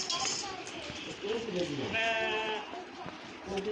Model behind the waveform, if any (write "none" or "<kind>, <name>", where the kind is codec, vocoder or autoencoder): none